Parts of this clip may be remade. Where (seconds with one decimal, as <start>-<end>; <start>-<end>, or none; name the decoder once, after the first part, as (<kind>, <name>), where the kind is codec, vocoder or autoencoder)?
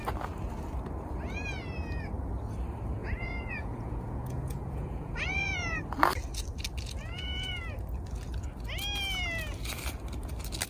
3.0-5.8 (vocoder, Vocos); 7.0-7.6